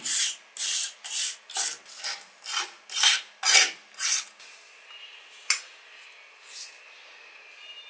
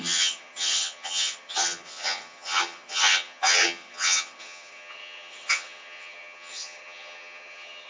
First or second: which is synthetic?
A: second